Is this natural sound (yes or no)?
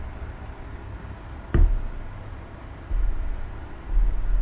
yes